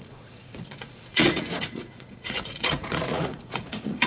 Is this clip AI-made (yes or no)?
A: yes